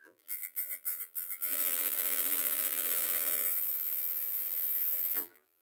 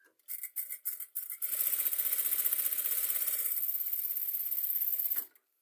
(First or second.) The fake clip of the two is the first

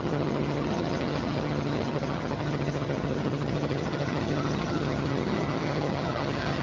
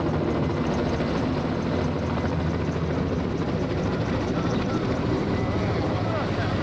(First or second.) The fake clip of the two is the first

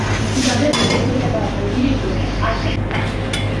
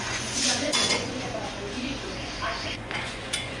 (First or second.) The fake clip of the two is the second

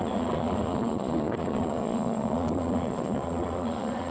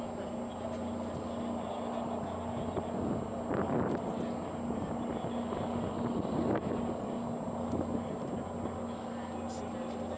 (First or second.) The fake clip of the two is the first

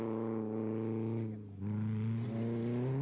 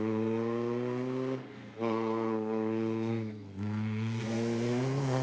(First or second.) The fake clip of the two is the second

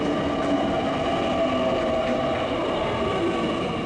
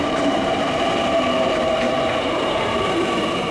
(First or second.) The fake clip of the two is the second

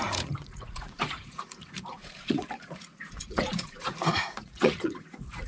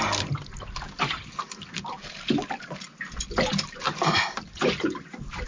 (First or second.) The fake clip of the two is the first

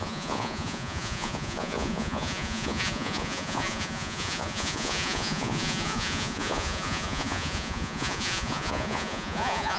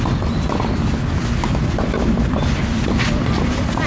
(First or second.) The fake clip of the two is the first